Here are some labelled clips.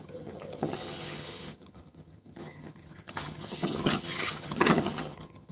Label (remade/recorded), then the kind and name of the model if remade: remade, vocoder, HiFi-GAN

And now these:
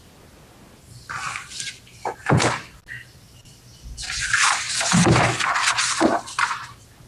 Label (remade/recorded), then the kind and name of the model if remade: recorded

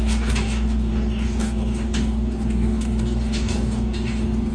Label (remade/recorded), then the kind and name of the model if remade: remade, codec, DAC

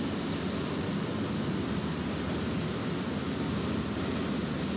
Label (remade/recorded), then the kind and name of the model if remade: recorded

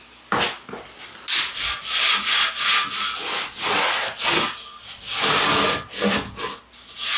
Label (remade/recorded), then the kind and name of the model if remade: recorded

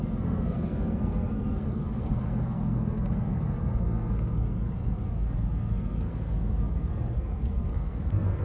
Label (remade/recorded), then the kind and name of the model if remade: remade, codec, SNAC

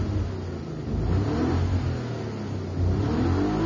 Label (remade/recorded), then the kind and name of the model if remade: recorded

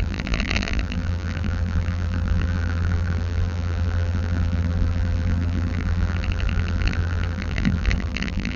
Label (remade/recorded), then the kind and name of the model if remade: remade, vocoder, BigVGAN v2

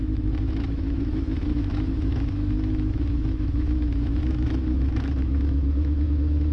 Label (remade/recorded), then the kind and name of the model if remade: remade, autoencoder, DAC-VAE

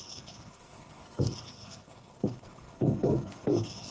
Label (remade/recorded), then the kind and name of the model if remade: remade, codec, SNAC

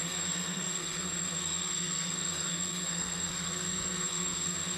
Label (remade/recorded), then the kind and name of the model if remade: remade, codec, SNAC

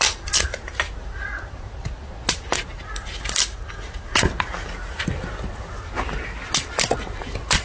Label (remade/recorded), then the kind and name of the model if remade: recorded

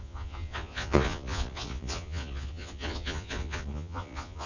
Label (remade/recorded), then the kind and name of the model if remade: remade, vocoder, Vocos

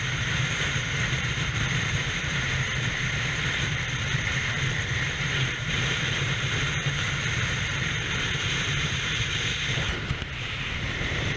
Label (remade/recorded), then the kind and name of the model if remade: remade, vocoder, BigVGAN v2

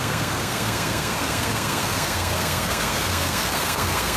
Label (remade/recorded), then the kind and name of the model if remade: remade, codec, SNAC